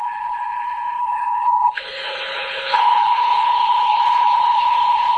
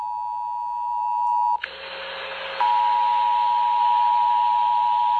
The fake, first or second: first